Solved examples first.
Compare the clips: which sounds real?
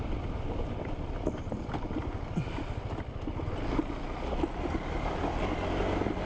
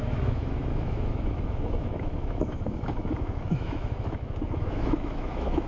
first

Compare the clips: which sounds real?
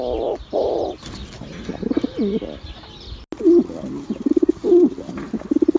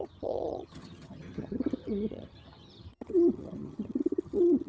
first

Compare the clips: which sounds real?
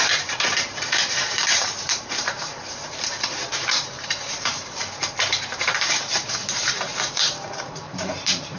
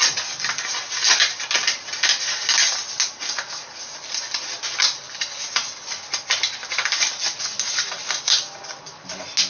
second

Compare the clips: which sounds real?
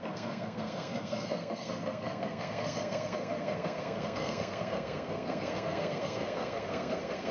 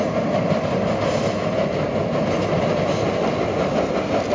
second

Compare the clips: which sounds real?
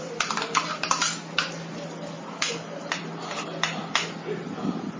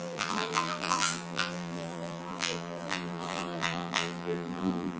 first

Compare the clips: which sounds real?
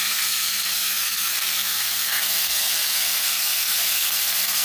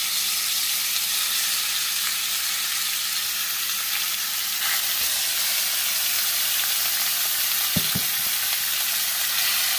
second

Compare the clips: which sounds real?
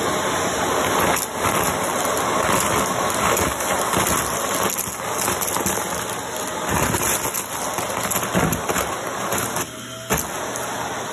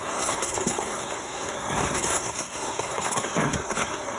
first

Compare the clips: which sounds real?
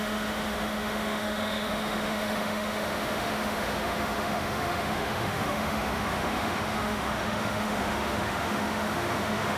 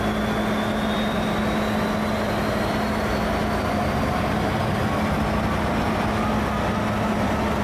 second